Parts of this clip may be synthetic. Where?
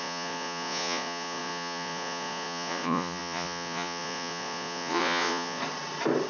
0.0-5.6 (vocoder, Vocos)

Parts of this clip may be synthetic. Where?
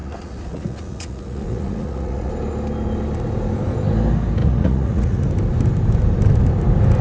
0.0-2.3 (vocoder, Vocos); 4.4-5.2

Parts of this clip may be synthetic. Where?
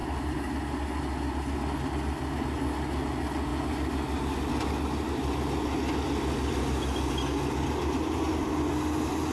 none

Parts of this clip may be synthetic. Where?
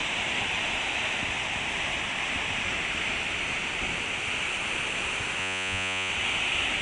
5.4-6.1 (vocoder, Vocos)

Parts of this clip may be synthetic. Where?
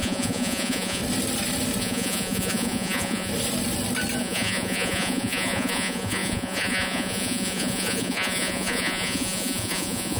0.0-1.0 (vocoder, Vocos); 1.8-3.3; 4.2-10.2